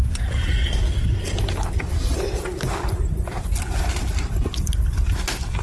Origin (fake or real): real